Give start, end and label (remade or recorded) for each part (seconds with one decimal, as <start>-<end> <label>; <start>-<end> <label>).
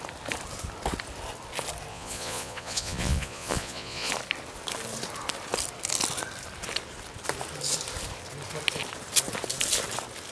0.0-1.9 recorded; 1.9-4.1 remade; 4.1-10.3 recorded